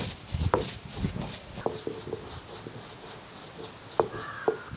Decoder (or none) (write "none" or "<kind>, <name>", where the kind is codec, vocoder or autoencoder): none